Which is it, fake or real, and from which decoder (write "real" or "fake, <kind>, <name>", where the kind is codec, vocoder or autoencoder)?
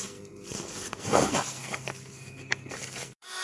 fake, codec, SNAC